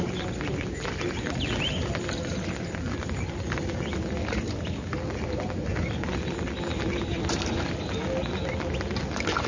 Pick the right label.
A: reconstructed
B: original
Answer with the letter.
B